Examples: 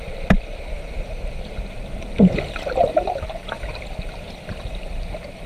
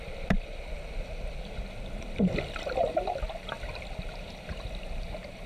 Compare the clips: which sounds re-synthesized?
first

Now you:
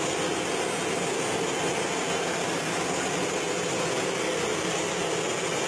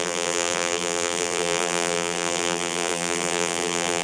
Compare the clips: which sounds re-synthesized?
second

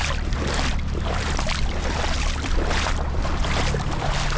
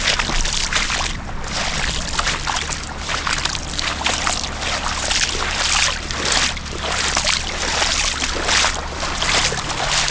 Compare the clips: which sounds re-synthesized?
first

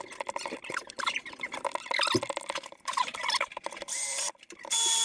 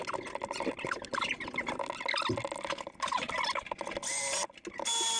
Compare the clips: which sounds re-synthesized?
first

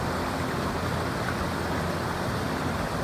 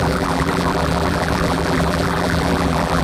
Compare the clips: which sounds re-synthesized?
second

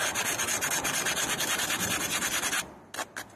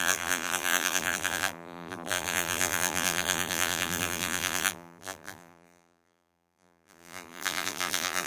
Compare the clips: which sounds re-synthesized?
second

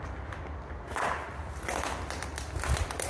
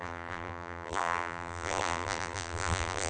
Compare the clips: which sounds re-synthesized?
second